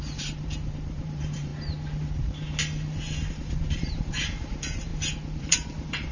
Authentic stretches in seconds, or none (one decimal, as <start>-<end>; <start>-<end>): 1.5-3.3; 4.9-5.4

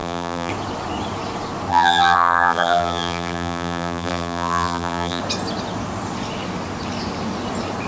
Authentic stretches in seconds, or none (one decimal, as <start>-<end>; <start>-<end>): 0.5-1.7; 5.2-7.9

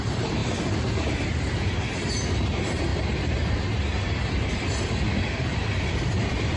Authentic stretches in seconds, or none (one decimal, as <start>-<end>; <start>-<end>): none